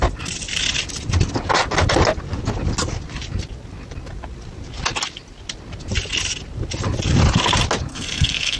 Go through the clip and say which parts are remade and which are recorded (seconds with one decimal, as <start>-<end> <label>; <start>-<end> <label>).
0.0-7.9 recorded; 7.9-8.6 remade